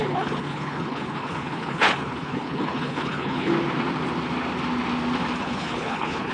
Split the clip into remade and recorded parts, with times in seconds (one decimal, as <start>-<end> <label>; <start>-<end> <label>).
0.0-3.5 remade; 3.5-5.4 recorded; 5.4-6.3 remade